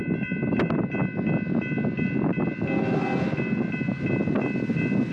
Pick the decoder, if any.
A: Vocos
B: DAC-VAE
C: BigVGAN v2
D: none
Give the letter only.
D